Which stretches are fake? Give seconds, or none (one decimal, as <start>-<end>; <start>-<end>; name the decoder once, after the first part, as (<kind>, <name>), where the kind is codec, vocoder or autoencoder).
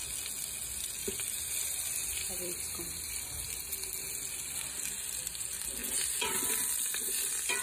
none